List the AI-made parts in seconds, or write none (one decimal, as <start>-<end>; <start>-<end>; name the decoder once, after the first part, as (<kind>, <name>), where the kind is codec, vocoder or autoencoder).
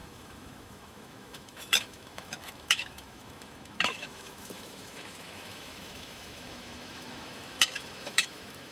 0.0-8.7 (autoencoder, DAC-VAE)